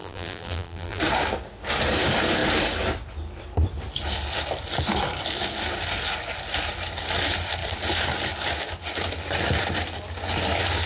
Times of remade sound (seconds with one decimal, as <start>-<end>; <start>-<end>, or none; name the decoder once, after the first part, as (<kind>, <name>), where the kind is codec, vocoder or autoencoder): 0.0-1.0 (vocoder, BigVGAN v2)